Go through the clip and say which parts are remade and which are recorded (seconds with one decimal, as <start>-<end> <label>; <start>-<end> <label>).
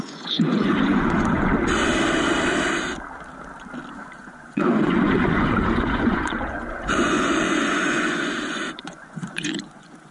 0.0-1.5 remade; 1.5-4.2 recorded; 4.2-10.1 remade